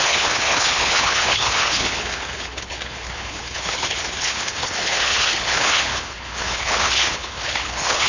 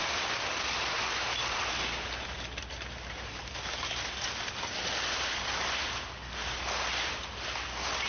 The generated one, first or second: first